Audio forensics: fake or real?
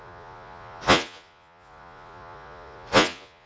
fake